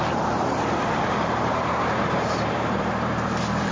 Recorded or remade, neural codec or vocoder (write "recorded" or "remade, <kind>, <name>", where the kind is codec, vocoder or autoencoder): remade, vocoder, BigVGAN v2